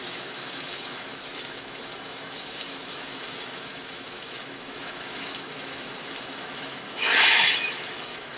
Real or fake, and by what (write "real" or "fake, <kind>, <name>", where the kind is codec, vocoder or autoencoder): fake, autoencoder, DAC-VAE